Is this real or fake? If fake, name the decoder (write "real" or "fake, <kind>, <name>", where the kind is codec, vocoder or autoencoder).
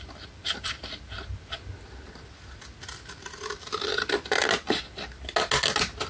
real